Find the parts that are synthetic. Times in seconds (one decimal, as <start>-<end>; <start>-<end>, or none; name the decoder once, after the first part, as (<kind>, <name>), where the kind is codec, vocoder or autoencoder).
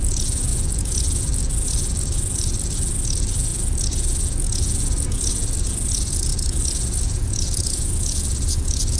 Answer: 0.0-9.0 (vocoder, Vocos)